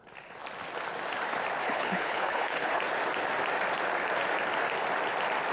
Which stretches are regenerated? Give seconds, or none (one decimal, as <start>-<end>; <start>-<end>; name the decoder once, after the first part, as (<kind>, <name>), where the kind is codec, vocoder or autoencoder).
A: 1.6-2.8 (codec, HILCodec)